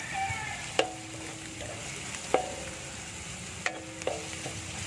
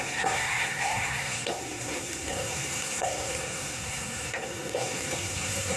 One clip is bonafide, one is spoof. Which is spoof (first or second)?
second